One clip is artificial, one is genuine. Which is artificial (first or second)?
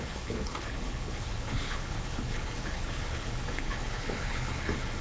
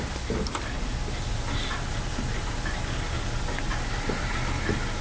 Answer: first